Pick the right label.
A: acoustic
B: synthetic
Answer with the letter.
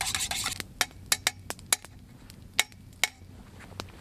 A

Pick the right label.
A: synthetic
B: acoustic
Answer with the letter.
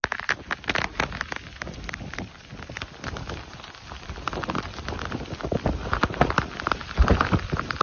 B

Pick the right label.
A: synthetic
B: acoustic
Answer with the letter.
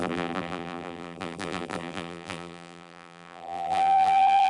A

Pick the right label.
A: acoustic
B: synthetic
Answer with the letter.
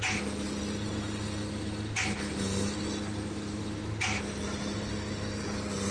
A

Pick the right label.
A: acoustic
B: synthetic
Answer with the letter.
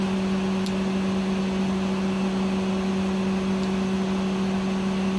A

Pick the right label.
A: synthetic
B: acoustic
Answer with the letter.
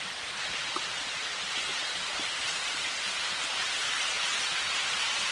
A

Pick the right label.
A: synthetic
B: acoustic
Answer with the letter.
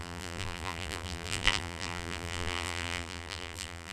A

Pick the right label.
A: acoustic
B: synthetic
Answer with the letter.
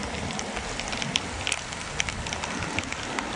A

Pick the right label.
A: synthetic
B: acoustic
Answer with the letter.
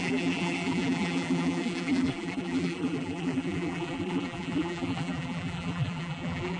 A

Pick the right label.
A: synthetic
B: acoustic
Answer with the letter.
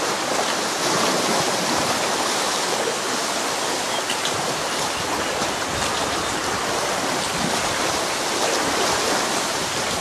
B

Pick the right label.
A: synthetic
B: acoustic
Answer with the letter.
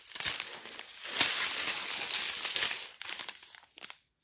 B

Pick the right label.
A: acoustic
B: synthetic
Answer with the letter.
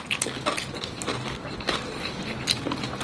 A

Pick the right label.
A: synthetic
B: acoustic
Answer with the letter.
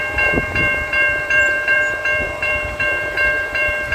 A